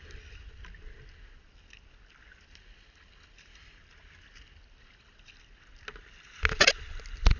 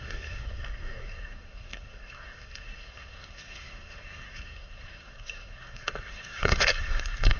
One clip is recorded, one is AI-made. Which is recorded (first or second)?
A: first